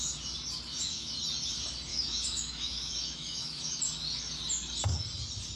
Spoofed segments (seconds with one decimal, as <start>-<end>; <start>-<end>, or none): 0.7-1.2; 1.9-3.8